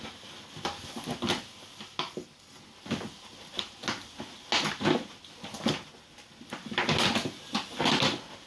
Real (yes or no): yes